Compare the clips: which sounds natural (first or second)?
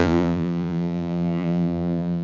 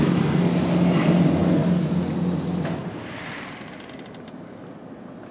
second